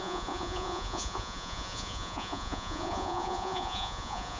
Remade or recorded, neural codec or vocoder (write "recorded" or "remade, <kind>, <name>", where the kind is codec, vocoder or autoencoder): remade, vocoder, Vocos